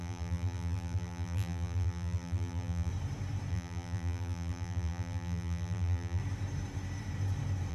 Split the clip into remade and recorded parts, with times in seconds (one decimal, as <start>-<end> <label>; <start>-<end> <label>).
0.0-2.9 remade; 2.9-3.5 recorded; 3.5-6.2 remade; 6.2-7.7 recorded